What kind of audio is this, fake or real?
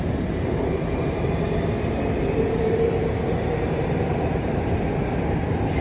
fake